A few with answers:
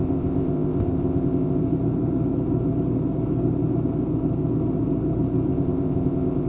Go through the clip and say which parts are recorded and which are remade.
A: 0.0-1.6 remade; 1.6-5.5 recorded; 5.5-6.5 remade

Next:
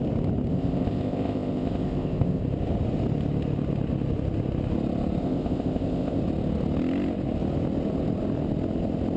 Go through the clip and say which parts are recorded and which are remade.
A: 0.0-0.5 recorded; 0.5-2.4 remade; 2.4-5.2 recorded; 5.2-6.2 remade; 6.2-9.2 recorded

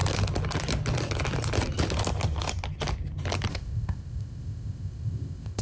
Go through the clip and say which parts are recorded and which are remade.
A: 0.0-3.5 recorded; 3.5-5.6 remade